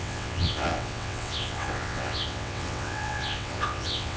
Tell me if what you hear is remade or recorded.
remade